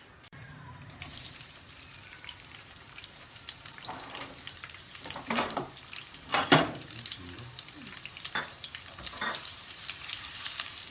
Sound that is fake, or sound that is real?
fake